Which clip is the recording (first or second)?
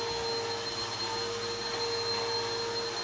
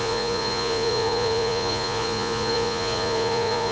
first